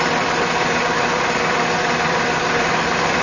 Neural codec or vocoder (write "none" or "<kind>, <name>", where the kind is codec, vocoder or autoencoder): none